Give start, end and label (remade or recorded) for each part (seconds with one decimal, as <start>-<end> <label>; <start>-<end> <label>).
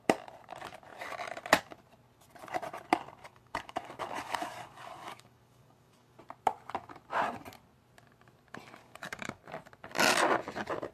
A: 0.0-3.2 recorded; 3.2-6.2 remade; 6.2-8.8 recorded; 8.8-9.4 remade; 9.4-10.9 recorded